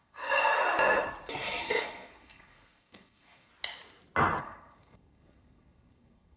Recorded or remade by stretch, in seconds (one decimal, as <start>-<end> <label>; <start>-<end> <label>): 0.0-0.5 remade; 0.5-1.6 recorded; 1.6-3.5 remade; 3.5-4.4 recorded; 4.4-6.4 remade